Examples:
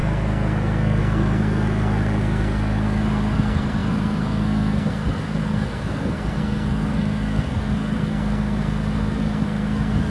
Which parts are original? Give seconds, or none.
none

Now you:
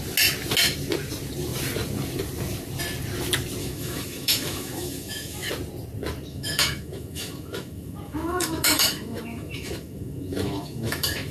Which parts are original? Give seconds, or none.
0.0-3.6; 5.5-6.3

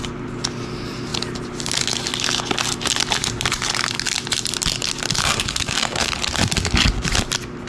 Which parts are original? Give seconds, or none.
0.0-5.2; 6.1-7.7

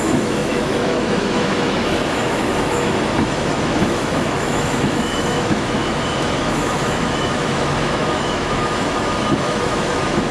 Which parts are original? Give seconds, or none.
none

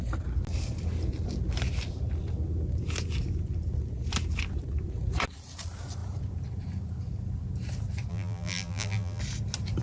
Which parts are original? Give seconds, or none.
0.0-8.1; 9.2-9.8

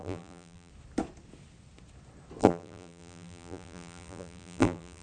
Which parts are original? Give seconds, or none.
0.7-2.4

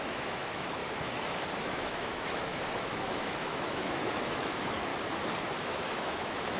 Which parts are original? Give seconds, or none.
0.8-1.5; 4.9-5.6